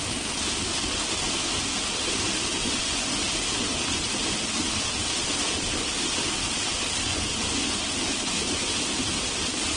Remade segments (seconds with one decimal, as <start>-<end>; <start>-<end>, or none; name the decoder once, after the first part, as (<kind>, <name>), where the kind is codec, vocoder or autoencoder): 2.6-3.2 (vocoder, Vocos); 7.1-7.8